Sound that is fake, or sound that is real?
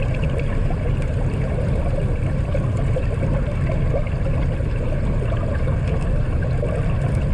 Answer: real